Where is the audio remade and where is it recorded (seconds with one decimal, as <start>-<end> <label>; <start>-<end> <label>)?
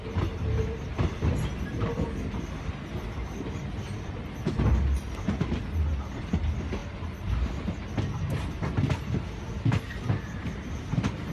0.0-11.3 recorded